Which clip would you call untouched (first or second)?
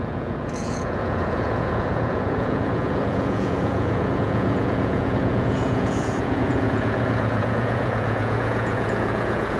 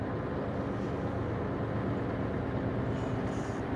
second